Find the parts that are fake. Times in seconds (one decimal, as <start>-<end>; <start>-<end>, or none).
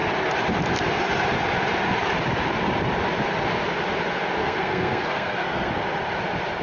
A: 4.4-5.7